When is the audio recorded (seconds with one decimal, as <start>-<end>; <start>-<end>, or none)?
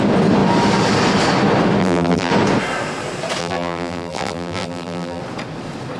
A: 0.0-1.8; 2.3-3.4; 5.2-6.0